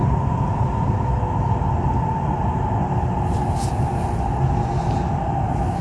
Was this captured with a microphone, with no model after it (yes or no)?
yes